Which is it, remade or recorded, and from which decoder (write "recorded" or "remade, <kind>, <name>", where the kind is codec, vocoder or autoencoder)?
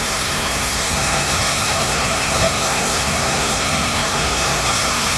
remade, codec, SNAC